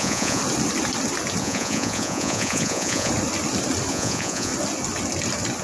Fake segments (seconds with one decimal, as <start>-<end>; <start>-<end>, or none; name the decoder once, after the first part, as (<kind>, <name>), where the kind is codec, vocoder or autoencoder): 0.0-0.4 (vocoder, Vocos); 1.4-3.1; 3.9-4.5